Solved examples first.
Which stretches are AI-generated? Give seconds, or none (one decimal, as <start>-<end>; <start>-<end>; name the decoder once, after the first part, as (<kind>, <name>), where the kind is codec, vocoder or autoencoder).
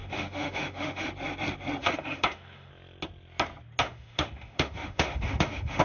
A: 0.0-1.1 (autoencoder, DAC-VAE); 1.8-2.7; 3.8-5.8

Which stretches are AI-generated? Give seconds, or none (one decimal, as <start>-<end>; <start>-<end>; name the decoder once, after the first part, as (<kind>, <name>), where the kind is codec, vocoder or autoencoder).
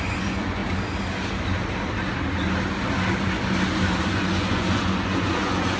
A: 0.0-0.6 (vocoder, Vocos); 4.1-5.8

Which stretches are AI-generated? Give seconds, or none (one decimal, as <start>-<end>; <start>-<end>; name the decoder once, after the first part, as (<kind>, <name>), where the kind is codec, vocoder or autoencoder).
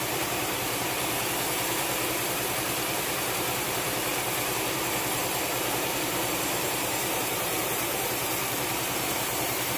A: 0.0-4.1 (vocoder, BigVGAN v2); 5.1-9.8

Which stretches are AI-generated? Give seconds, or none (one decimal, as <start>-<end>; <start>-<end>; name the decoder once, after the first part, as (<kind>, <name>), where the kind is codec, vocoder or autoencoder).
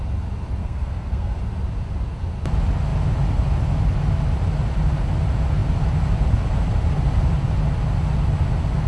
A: 0.6-1.4 (codec, SNAC)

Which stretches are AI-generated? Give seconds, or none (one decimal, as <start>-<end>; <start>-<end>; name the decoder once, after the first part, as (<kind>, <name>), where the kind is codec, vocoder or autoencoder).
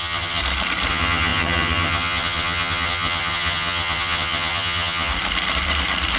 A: 0.0-0.4 (vocoder, HiFi-GAN); 0.9-5.1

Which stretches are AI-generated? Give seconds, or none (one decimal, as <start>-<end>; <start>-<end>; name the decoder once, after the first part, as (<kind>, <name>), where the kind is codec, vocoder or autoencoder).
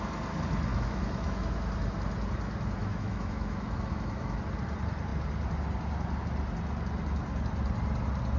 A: 0.7-1.5 (autoencoder, DAC-VAE); 2.8-4.4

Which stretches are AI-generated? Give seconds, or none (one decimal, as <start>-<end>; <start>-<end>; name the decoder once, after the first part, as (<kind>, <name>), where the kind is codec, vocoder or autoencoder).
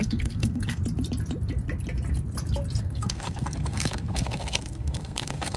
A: 0.0-0.8 (codec, SNAC); 2.8-5.6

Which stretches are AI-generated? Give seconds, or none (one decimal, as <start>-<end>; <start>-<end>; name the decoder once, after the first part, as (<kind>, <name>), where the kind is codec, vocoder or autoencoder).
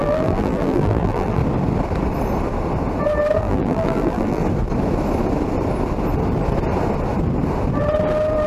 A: 0.0-1.4 (vocoder, BigVGAN v2); 3.4-4.4